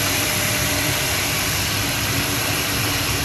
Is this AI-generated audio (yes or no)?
yes